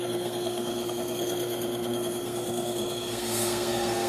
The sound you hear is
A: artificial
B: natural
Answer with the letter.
A